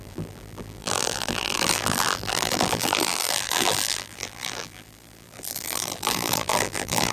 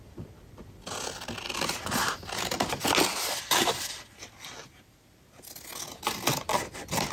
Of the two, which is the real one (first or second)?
second